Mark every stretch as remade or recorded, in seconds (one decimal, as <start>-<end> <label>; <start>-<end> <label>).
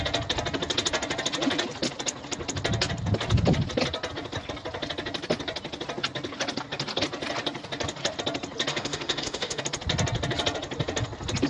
0.0-8.7 recorded; 8.7-9.6 remade; 9.6-11.5 recorded